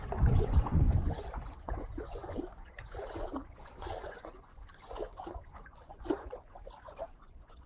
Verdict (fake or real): fake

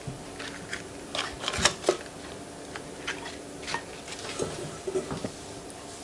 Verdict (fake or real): real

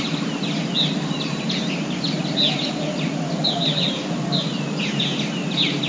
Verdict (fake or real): real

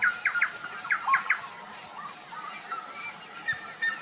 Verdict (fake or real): real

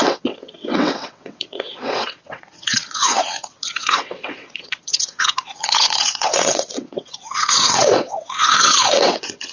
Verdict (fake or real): fake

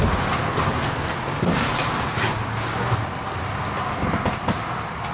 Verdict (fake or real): real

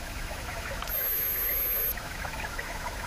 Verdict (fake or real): fake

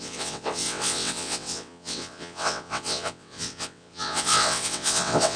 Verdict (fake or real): fake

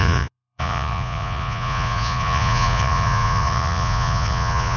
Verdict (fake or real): fake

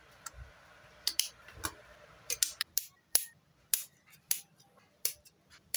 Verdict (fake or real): fake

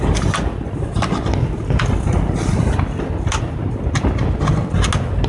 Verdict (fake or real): real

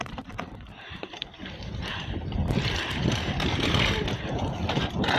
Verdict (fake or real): fake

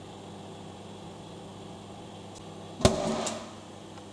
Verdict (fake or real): real